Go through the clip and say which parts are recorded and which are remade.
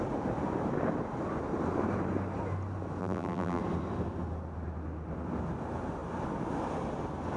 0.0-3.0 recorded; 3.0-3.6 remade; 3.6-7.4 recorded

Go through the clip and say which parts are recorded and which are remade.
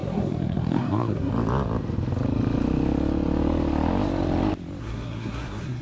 0.0-1.3 remade; 1.3-4.8 recorded; 4.8-5.8 remade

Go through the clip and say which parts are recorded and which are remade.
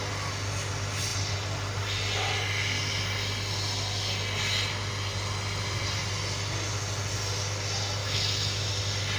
0.0-8.0 recorded; 8.0-8.7 remade; 8.7-9.2 recorded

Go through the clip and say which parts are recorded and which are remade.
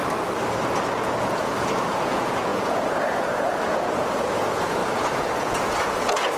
0.0-1.0 recorded; 1.0-6.4 remade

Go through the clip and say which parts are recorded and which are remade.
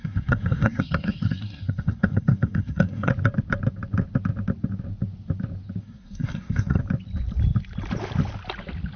0.0-3.1 remade; 3.1-5.8 recorded; 5.8-6.8 remade; 6.8-9.0 recorded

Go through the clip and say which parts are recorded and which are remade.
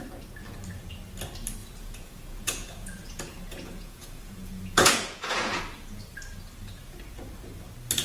0.0-1.6 recorded; 1.6-5.6 remade; 5.6-8.0 recorded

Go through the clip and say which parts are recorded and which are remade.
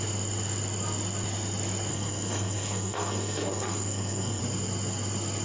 0.0-1.9 recorded; 1.9-4.4 remade; 4.4-5.4 recorded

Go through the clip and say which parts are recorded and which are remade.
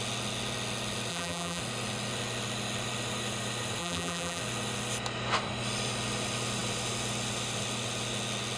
0.0-1.1 recorded; 1.1-1.6 remade; 1.6-3.8 recorded; 3.8-4.4 remade; 4.4-8.6 recorded